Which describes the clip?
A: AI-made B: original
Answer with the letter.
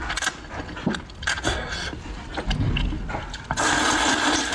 B